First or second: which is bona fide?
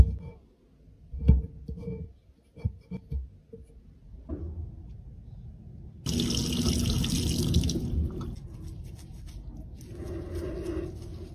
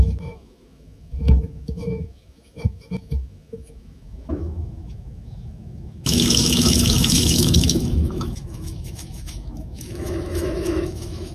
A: first